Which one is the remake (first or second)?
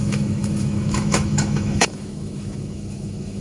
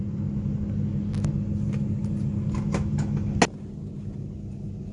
first